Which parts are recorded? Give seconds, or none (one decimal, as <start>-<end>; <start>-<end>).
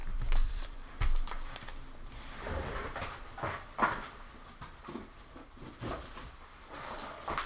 0.9-7.5